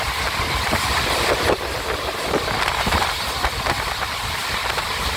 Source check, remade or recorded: remade